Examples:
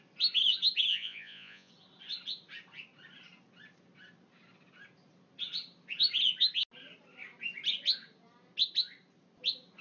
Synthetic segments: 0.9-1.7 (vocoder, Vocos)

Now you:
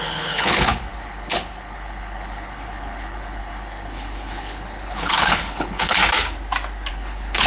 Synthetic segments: 0.0-6.0 (codec, HILCodec); 6.9-7.5

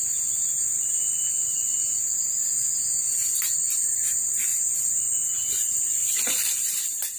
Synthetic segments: 4.5-5.5 (vocoder, BigVGAN v2)